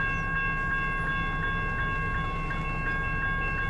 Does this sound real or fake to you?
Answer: real